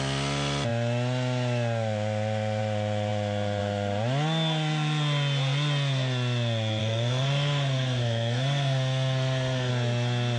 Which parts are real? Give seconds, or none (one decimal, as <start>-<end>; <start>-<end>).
0.0-6.8; 9.7-10.4